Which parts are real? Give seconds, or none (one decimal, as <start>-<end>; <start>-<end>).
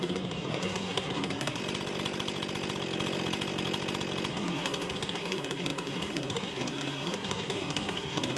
1.6-4.3